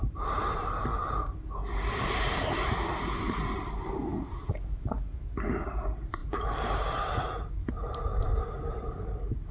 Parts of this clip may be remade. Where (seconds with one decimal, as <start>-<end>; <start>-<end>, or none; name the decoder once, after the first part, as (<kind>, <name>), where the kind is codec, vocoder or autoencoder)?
0.0-0.9 (vocoder, BigVGAN v2); 2.9-4.1; 5.7-9.5